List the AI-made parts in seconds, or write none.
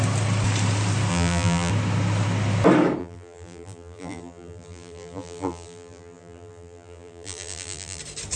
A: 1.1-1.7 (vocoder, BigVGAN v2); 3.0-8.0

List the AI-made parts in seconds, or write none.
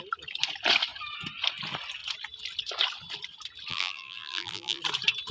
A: 3.7-4.8 (vocoder, BigVGAN v2)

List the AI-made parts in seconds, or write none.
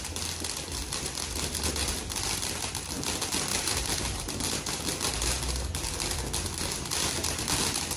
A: 3.5-4.3 (vocoder, BigVGAN v2)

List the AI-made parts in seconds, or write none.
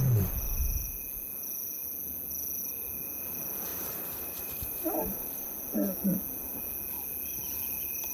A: 3.7-5.4 (vocoder, BigVGAN v2)